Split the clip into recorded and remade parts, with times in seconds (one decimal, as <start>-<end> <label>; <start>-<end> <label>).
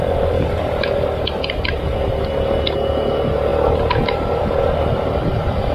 0.0-5.7 recorded